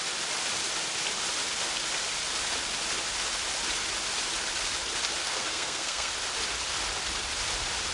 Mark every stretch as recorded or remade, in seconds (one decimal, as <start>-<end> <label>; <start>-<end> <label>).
0.0-5.2 recorded; 5.2-6.1 remade; 6.1-7.9 recorded